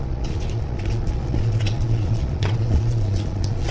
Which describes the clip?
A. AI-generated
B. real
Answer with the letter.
A